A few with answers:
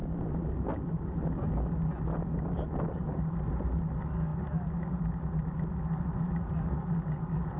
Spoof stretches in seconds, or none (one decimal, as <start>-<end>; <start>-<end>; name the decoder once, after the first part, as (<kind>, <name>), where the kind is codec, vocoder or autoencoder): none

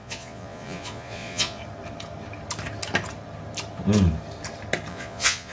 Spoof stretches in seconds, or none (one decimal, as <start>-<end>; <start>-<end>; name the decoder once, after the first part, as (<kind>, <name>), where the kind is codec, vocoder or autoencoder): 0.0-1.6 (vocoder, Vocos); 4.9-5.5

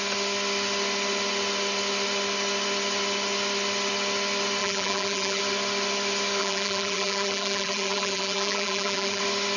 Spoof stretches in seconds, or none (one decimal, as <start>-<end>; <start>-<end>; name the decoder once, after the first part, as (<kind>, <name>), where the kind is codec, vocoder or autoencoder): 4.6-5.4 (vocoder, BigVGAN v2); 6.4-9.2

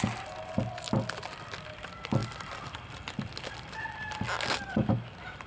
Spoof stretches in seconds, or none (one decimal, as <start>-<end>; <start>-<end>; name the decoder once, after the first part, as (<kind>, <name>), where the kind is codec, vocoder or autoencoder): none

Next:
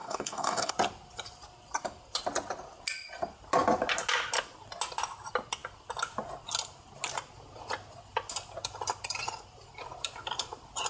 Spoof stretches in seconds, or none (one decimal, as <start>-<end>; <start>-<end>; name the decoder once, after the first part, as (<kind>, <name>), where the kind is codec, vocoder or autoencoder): 0.0-0.7 (codec, DAC)